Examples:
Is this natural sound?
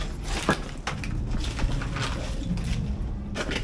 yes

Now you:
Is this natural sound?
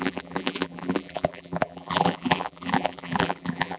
no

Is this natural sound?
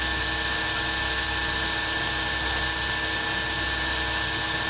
yes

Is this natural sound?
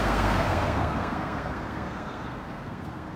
no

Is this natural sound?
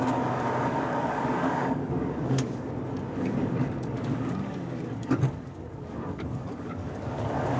no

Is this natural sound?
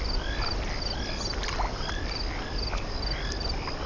yes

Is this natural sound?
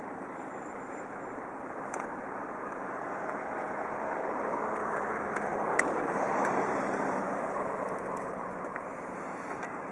no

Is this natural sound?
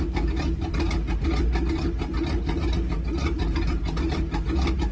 yes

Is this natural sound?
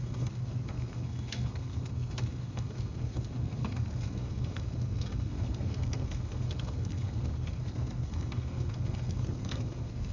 no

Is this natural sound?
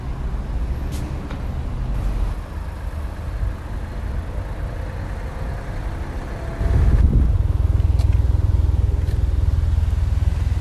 yes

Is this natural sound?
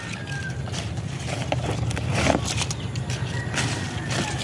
yes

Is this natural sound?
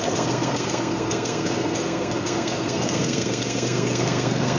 no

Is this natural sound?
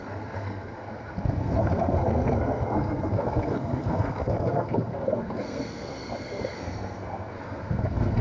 no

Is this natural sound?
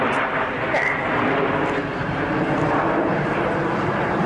yes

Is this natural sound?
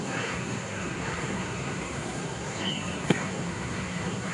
no